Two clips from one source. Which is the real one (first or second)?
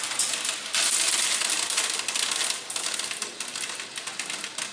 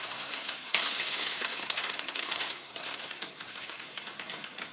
first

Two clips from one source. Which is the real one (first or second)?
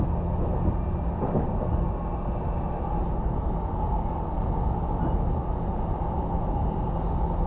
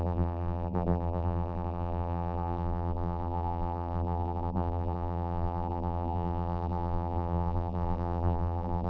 first